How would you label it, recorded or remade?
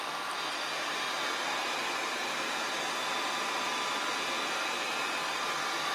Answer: remade